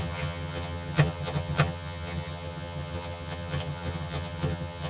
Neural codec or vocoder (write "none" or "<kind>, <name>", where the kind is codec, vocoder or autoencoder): vocoder, HiFi-GAN